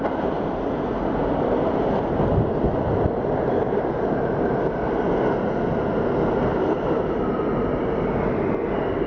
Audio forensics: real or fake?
real